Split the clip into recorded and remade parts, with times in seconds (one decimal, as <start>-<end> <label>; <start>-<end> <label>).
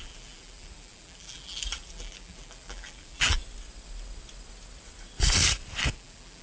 0.0-3.4 remade; 3.4-5.9 recorded; 5.9-6.4 remade